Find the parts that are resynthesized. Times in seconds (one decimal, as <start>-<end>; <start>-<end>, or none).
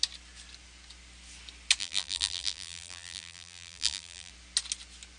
1.8-4.3